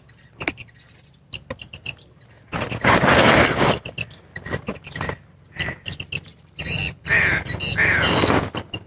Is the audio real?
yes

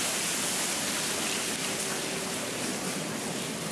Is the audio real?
yes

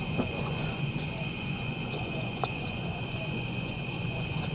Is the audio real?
no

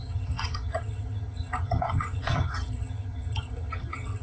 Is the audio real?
no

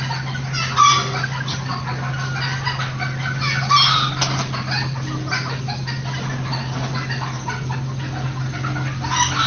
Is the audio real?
yes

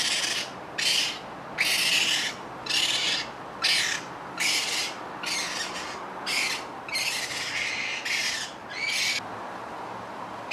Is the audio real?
yes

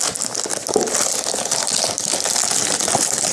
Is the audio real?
yes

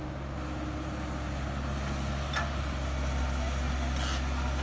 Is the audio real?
yes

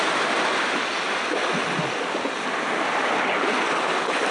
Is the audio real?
yes